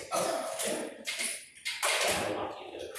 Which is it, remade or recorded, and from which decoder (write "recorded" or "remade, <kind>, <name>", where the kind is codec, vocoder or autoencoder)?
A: recorded